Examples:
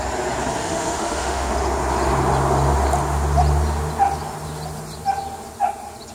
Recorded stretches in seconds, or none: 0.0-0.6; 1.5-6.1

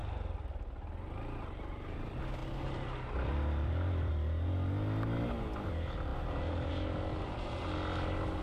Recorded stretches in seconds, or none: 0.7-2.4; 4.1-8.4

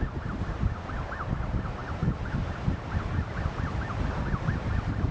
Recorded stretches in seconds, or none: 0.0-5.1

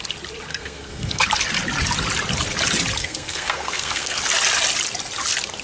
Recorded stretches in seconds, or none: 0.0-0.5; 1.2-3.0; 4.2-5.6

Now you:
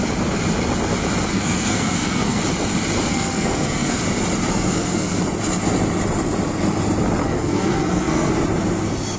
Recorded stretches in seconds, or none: 0.0-1.3; 2.4-3.1; 4.0-4.5; 5.2-7.2; 8.3-9.2